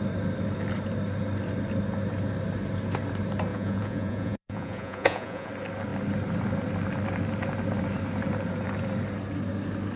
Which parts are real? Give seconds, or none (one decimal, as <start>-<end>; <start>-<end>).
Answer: 0.0-3.5; 5.5-10.0